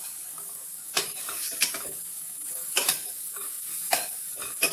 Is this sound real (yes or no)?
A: no